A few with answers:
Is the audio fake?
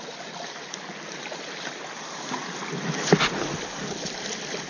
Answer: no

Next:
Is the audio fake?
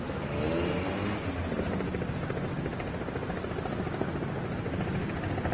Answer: no